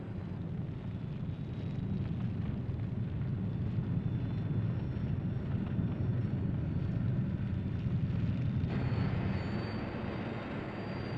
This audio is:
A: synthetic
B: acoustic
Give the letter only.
B